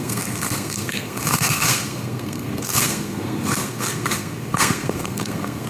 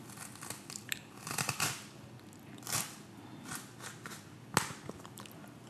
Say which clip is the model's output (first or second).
first